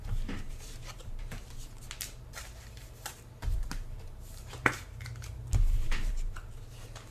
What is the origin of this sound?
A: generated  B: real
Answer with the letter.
A